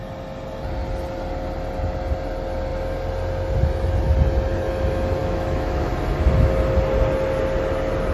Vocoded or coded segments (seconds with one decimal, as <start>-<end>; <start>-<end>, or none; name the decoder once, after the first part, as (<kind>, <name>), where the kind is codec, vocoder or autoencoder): 5.2-5.9 (autoencoder, DAC-VAE)